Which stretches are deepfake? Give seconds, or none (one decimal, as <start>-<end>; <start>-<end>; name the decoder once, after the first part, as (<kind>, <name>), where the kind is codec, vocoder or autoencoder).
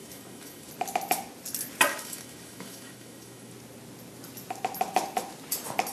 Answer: 0.0-0.7 (autoencoder, DAC-VAE); 1.9-3.5